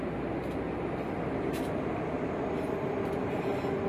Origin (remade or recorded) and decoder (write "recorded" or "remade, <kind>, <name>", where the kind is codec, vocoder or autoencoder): recorded